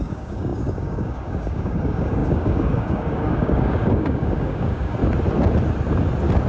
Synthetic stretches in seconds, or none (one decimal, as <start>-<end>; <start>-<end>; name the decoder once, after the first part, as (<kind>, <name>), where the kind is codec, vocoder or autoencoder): 0.0-5.0 (codec, DAC)